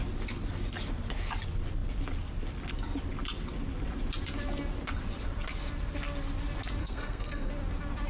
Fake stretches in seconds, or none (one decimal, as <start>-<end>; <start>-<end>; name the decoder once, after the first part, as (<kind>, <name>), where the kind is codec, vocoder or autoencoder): 6.8-7.5 (codec, SNAC)